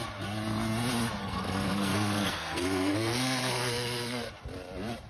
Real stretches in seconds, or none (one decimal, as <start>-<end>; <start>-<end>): 0.0-1.2; 4.3-5.1